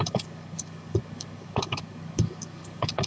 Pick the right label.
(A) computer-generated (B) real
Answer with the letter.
A